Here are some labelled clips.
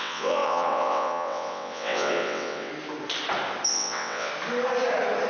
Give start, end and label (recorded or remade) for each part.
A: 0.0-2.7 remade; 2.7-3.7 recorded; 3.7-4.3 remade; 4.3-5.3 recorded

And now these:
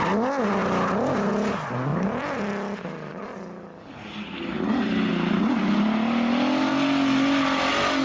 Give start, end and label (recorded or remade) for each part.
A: 0.0-8.0 recorded

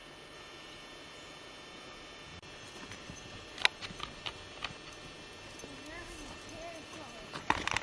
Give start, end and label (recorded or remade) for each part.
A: 0.0-7.8 recorded

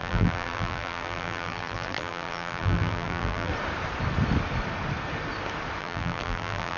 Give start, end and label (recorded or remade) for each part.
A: 0.0-3.5 remade; 3.5-5.8 recorded; 5.8-6.8 remade

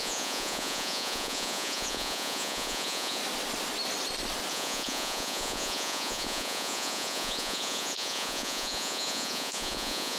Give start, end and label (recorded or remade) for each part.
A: 0.0-3.2 remade; 3.2-4.5 recorded; 4.5-10.2 remade

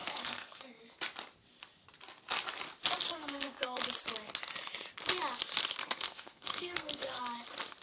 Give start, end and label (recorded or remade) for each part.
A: 0.0-0.8 remade; 0.8-3.1 recorded; 3.1-3.8 remade; 3.8-5.8 recorded; 5.8-7.2 remade; 7.2-7.8 recorded

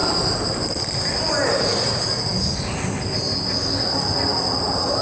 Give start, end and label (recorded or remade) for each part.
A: 0.0-1.9 remade; 1.9-5.0 recorded